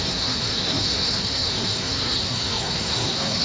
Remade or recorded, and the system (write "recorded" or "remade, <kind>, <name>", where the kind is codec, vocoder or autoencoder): remade, codec, SNAC